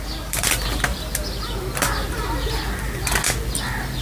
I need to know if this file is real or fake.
real